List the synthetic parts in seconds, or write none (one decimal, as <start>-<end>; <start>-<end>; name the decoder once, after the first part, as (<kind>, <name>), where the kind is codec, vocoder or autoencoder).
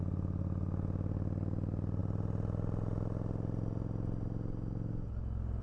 none